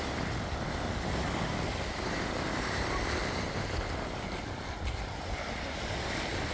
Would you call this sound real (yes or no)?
yes